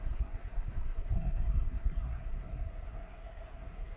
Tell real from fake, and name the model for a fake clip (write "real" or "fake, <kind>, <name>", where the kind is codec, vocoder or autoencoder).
fake, codec, SNAC